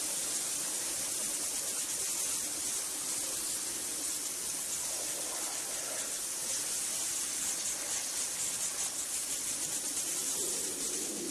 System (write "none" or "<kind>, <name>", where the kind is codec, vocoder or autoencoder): none